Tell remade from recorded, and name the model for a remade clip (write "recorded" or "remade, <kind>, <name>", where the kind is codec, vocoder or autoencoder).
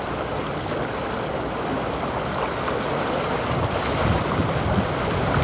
recorded